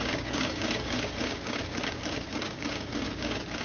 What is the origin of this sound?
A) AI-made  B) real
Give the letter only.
A